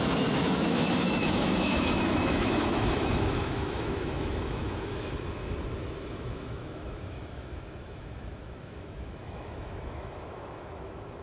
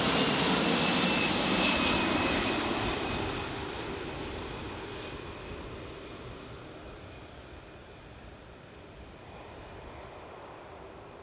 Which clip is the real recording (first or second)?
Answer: second